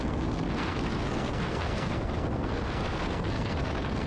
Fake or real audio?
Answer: fake